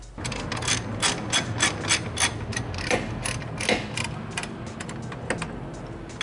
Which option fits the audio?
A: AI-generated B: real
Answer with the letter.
B